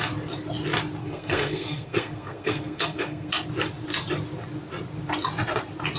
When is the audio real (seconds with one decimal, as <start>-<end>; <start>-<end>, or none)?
0.0-1.0; 3.3-6.0